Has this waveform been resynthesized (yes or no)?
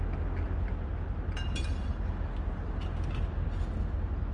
no